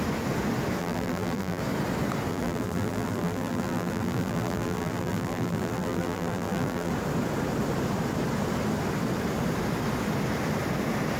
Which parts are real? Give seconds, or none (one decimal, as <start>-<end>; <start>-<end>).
0.0-0.8; 1.6-2.3; 6.9-11.2